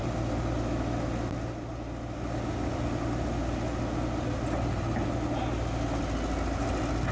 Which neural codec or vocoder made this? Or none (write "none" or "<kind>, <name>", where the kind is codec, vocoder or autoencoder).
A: none